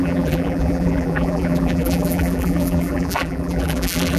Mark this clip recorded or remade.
remade